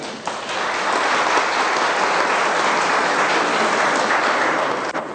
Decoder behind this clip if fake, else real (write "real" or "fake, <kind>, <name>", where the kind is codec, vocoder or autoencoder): real